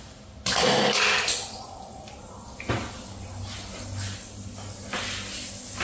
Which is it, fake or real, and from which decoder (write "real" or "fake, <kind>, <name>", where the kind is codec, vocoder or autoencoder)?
real